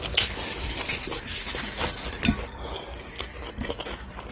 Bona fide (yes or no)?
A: yes